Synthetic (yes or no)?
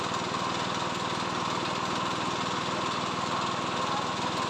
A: no